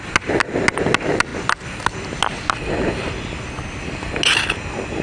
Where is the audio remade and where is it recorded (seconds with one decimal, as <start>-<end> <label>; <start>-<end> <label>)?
0.0-5.0 recorded